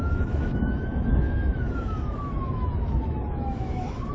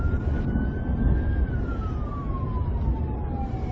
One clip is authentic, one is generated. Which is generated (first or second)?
first